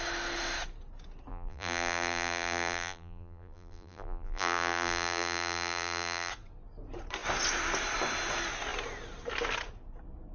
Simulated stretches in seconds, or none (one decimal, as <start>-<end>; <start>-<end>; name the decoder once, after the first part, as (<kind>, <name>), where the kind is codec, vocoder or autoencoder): 1.3-6.3 (vocoder, BigVGAN v2)